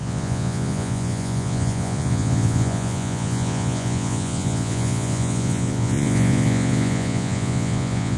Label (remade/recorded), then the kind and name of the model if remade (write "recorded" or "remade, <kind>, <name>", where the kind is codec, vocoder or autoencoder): remade, vocoder, Vocos